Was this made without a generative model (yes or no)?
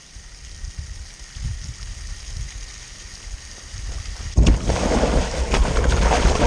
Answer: yes